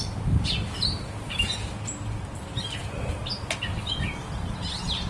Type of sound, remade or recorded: recorded